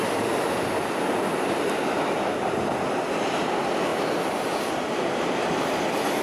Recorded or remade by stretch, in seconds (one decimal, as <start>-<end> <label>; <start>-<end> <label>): 0.0-6.2 recorded